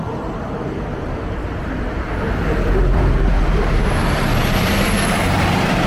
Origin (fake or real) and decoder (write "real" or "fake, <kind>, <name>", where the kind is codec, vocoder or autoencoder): fake, vocoder, BigVGAN v2